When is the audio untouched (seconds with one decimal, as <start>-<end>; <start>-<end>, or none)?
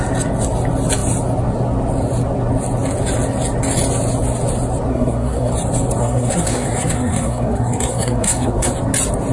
0.0-4.9; 5.5-6.0; 8.7-9.3